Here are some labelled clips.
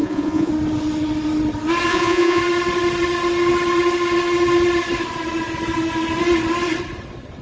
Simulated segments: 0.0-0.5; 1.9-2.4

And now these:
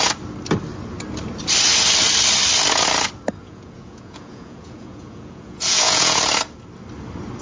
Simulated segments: 3.4-6.2

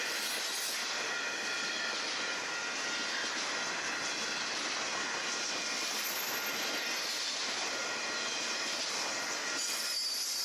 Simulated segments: none

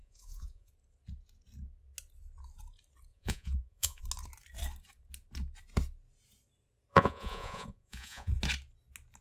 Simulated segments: 0.0-0.7; 3.1-4.0; 6.9-8.4

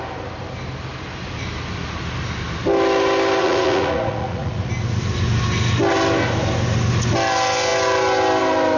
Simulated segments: 3.4-4.7

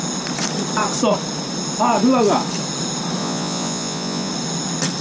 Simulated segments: 3.2-4.3